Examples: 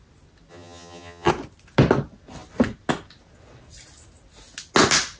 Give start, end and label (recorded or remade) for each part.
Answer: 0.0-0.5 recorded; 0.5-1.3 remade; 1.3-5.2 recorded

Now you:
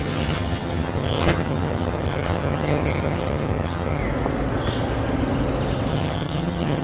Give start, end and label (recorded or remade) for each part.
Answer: 0.0-4.0 remade; 4.0-5.9 recorded; 5.9-6.8 remade